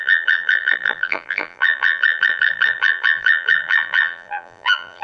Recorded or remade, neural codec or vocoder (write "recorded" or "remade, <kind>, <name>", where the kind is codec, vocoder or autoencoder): remade, vocoder, BigVGAN v2